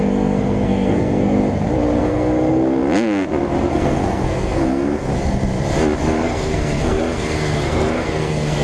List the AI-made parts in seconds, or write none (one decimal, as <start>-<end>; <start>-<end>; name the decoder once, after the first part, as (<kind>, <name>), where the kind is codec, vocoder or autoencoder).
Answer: 0.0-1.4 (codec, SNAC); 2.0-2.8; 3.7-5.1; 6.0-8.6